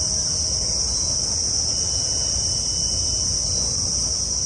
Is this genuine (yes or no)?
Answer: yes